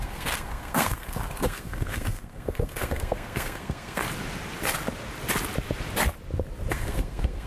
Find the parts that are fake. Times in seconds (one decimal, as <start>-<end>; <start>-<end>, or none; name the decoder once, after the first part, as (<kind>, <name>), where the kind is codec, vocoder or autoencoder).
0.0-4.0 (codec, SNAC); 6.7-7.5